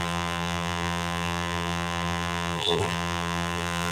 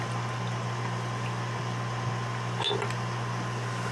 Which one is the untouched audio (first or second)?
second